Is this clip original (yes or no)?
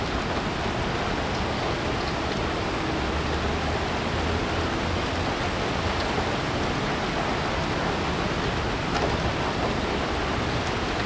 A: yes